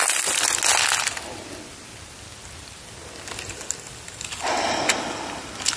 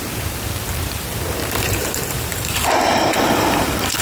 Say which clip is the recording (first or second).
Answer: first